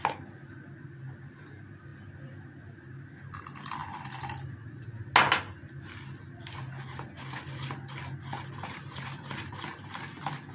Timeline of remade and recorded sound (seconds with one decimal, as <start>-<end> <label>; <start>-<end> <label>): 0.0-10.5 recorded